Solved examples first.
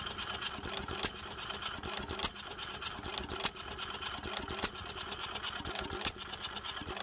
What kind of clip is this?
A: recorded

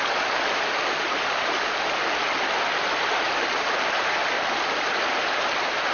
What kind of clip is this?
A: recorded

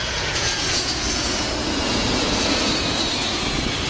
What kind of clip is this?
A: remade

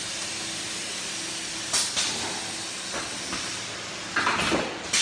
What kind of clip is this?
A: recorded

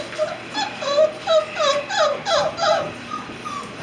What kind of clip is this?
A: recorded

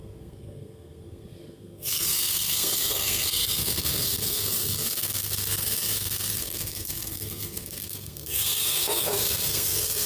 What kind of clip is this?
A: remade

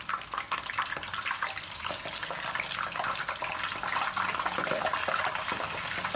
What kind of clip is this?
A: recorded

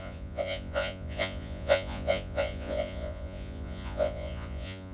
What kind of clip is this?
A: remade